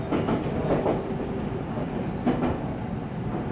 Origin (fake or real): real